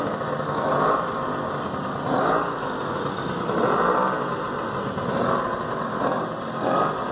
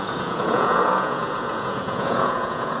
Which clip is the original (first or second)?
first